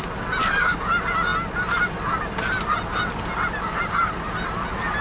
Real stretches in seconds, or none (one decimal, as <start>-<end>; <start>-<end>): 0.0-0.4; 0.9-5.0